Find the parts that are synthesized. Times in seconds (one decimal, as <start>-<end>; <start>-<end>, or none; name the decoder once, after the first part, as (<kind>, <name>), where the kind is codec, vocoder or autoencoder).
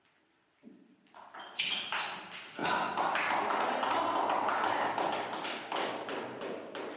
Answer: none